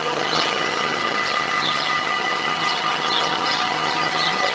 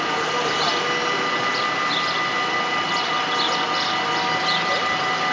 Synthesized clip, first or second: first